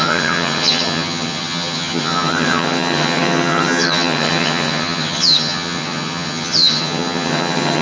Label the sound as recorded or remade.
remade